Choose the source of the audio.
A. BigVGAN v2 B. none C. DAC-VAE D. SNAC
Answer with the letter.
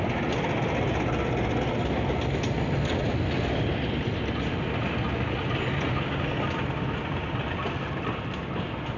B